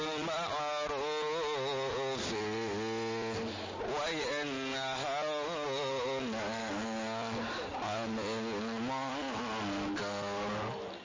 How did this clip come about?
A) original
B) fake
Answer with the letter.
A